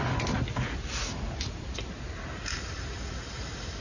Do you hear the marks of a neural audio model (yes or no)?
no